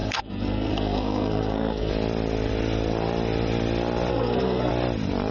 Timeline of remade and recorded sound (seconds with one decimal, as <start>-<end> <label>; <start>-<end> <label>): 0.0-1.9 remade; 1.9-4.1 recorded; 4.1-4.7 remade; 4.7-5.3 recorded